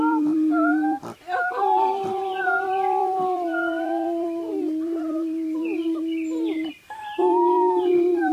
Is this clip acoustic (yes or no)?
no